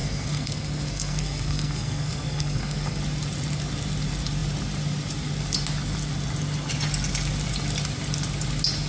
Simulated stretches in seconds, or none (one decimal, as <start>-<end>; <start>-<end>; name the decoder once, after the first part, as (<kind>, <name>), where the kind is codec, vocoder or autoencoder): 0.0-3.0 (codec, SNAC)